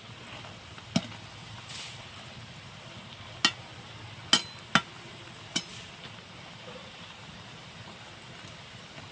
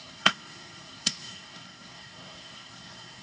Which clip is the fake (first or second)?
second